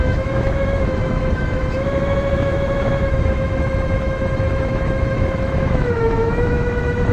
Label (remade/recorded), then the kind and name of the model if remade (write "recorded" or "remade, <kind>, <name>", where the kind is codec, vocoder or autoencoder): remade, autoencoder, DAC-VAE